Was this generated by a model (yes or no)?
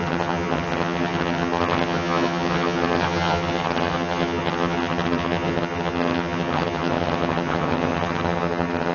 yes